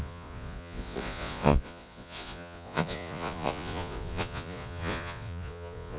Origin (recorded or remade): remade